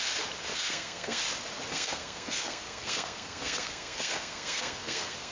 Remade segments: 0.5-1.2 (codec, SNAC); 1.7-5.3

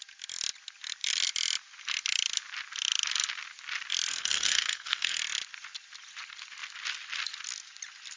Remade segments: 4.1-5.2 (codec, SNAC)

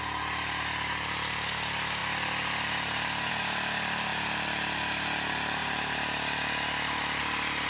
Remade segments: none

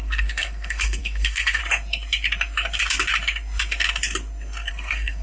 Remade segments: 0.0-1.6 (codec, SNAC); 4.7-5.2

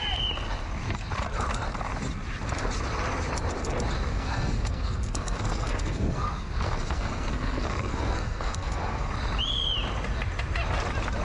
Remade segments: 4.1-9.1 (codec, SNAC)

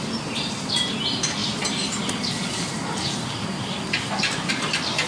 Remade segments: none

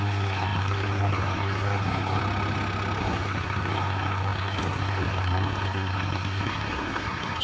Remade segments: 0.0-2.2 (codec, SNAC); 3.0-7.4